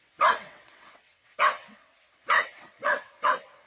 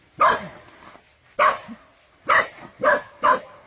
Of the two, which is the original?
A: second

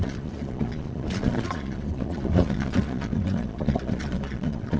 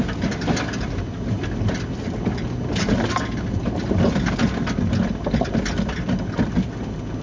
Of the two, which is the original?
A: second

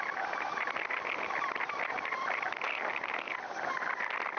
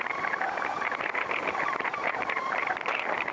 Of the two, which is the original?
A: first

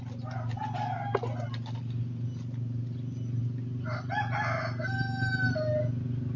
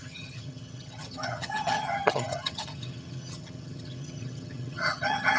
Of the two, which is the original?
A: first